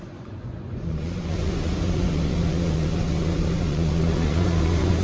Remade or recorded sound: remade